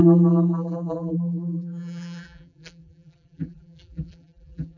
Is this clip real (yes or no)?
no